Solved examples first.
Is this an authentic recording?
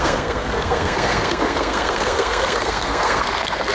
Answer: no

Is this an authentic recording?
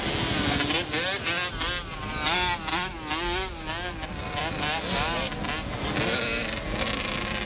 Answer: yes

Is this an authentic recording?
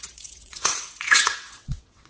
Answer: no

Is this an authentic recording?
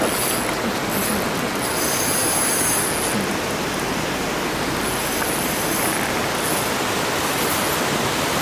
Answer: yes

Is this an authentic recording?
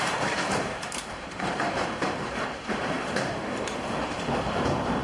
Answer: no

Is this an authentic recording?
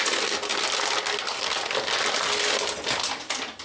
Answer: yes